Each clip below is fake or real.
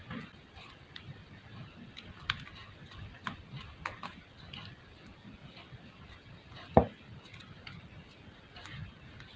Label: real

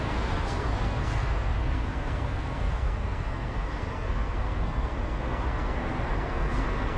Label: fake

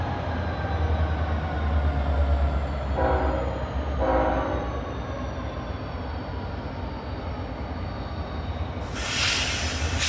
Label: real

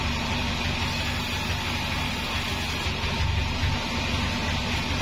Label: real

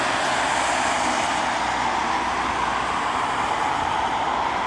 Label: real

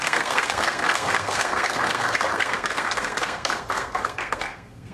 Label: fake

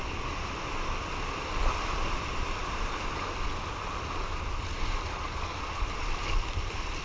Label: real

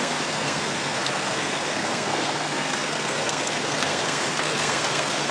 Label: fake